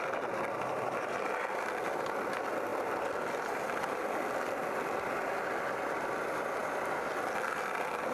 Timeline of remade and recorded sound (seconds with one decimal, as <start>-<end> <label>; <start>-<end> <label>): 0.0-8.1 recorded